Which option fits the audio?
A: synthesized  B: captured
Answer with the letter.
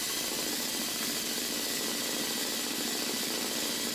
B